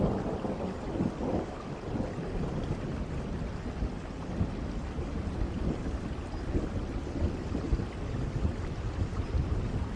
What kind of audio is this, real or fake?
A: real